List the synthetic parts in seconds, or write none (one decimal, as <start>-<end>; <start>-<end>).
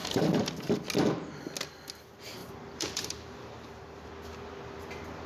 0.0-0.5; 2.4-4.1